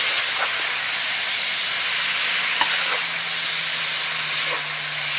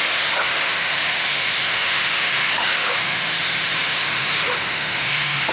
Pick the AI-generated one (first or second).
second